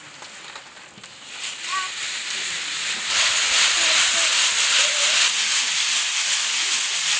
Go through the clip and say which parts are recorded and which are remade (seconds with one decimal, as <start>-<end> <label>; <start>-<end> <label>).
0.0-7.2 recorded